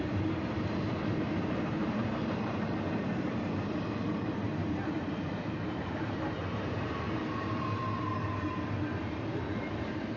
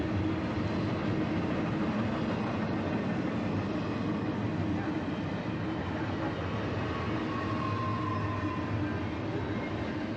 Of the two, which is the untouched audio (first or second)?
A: second